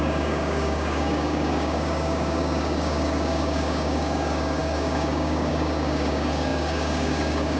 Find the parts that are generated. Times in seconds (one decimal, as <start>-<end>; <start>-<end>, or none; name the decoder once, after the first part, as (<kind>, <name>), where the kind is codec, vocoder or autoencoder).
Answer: 0.0-7.6 (codec, DAC)